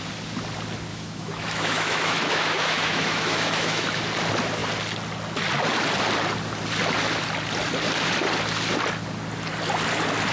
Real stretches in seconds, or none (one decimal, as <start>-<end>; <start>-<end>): 0.0-0.9; 4.0-10.3